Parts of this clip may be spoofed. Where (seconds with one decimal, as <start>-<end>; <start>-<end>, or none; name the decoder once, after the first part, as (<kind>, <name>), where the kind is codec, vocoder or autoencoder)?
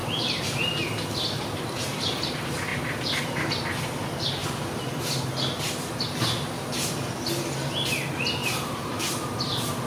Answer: 0.0-2.3 (vocoder, BigVGAN v2); 8.4-8.9